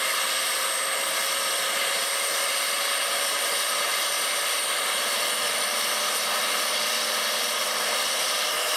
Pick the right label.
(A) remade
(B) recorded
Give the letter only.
A